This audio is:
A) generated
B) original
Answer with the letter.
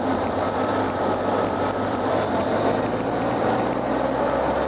A